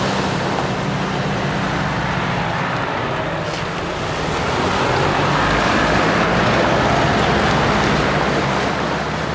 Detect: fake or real real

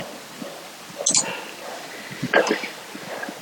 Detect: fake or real real